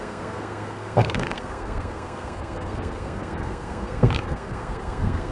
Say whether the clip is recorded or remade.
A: remade